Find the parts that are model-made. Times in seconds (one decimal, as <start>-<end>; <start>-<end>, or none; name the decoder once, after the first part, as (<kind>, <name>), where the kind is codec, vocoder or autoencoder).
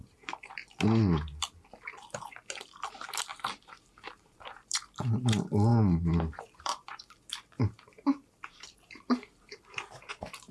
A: 0.0-0.6 (vocoder, BigVGAN v2); 3.7-5.7; 6.4-10.5